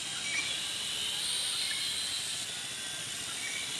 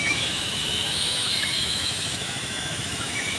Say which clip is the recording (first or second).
first